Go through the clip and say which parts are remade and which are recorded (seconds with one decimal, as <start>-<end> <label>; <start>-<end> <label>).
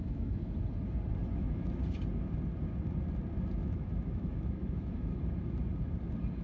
0.0-0.5 remade; 0.5-1.2 recorded; 1.2-1.8 remade; 1.8-3.6 recorded; 3.6-5.2 remade; 5.2-6.4 recorded